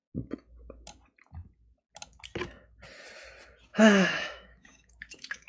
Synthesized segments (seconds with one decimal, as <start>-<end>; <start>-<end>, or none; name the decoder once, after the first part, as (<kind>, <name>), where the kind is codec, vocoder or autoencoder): 3.7-5.5 (autoencoder, DAC-VAE)

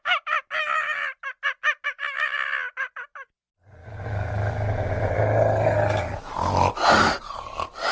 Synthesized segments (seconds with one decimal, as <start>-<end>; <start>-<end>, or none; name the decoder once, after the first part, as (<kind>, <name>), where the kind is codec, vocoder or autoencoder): 3.8-5.2 (autoencoder, DAC-VAE)